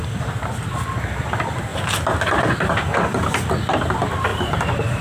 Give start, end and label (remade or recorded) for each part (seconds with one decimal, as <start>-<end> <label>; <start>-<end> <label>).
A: 0.0-4.3 recorded; 4.3-5.0 remade